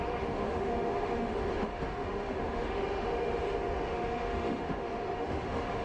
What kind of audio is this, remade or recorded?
remade